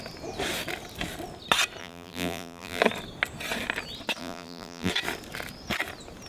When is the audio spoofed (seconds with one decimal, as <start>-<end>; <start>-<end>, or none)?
1.8-2.8; 4.2-4.9